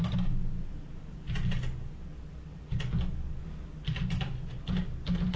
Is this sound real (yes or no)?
yes